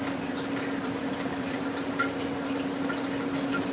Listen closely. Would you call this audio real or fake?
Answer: real